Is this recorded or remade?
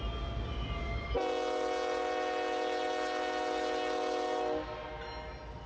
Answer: recorded